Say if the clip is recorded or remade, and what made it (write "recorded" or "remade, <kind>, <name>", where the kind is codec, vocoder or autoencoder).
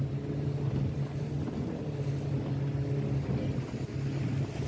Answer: recorded